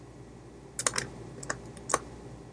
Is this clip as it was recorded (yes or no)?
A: yes